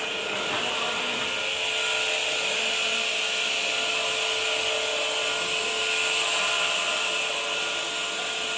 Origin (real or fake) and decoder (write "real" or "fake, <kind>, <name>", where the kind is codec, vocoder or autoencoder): real